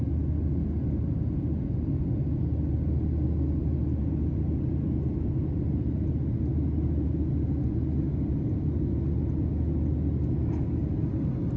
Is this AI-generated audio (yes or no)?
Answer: no